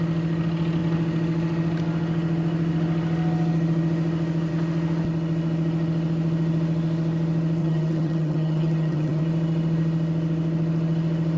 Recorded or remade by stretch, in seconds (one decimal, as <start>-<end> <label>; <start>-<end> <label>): 0.0-7.6 recorded; 7.6-9.2 remade; 9.2-11.4 recorded